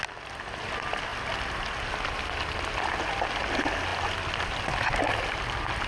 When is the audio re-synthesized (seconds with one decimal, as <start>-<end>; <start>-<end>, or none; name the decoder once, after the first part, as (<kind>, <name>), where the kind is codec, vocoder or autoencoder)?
none